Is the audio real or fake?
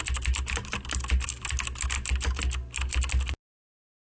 real